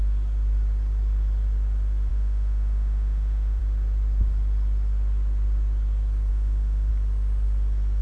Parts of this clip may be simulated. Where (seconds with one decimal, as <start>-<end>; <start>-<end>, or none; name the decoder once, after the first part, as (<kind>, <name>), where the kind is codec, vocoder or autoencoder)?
2.1-3.6 (autoencoder, DAC-VAE); 6.3-6.9